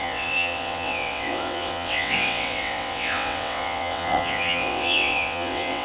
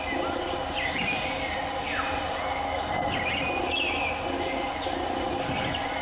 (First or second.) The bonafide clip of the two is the second